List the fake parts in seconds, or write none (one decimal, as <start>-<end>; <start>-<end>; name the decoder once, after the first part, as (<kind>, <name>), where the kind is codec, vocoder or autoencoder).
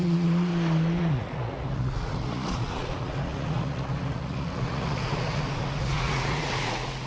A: 0.0-0.5 (vocoder, Vocos); 1.0-7.1